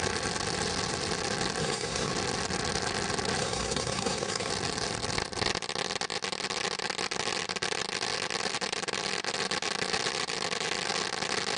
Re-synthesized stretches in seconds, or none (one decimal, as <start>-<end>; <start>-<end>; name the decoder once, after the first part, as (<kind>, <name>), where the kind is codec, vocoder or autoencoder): 1.6-2.1 (codec, SNAC); 3.4-4.5